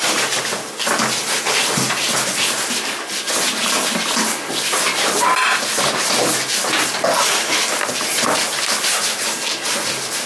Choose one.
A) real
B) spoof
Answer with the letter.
A